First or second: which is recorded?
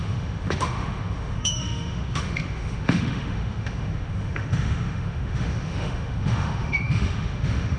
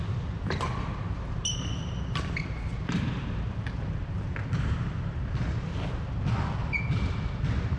second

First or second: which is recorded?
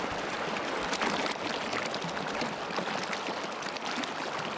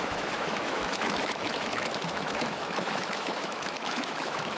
first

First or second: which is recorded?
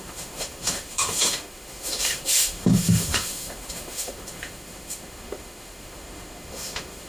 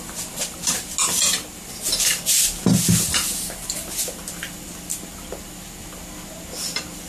second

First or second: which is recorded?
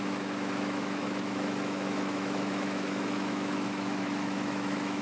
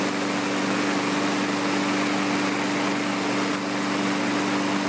second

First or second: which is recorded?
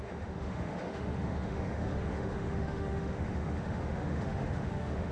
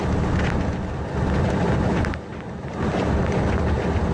second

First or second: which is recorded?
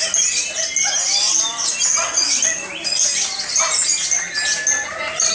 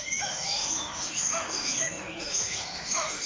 first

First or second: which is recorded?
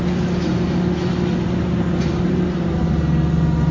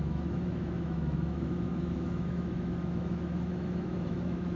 first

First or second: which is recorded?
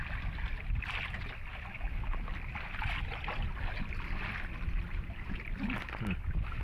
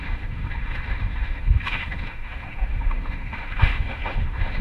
first